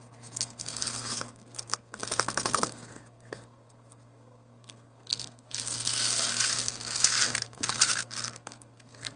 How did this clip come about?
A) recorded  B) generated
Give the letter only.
B